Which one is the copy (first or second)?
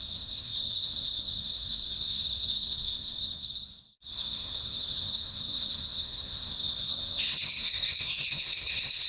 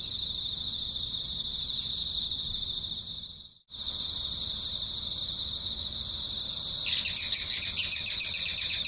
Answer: first